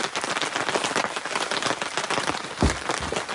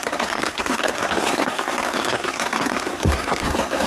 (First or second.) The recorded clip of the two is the first